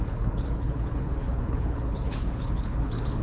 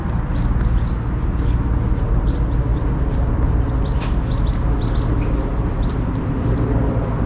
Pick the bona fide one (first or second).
second